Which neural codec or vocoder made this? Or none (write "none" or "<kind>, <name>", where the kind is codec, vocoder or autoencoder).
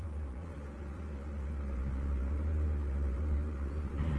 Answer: vocoder, Vocos